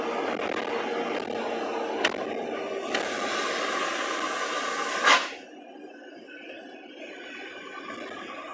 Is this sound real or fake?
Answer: real